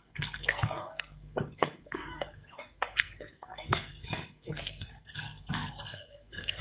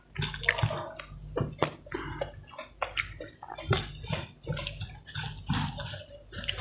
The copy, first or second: first